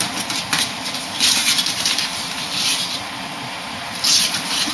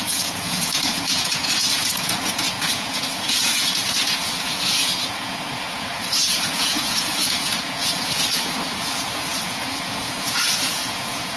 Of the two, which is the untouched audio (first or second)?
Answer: first